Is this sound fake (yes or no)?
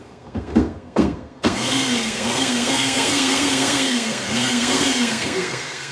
yes